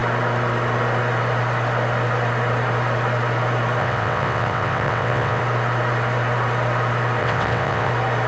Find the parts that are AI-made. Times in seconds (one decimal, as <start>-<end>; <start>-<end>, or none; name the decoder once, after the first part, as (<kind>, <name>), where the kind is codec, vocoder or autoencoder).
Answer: 3.8-5.4 (vocoder, WaveNeXt); 7.2-7.9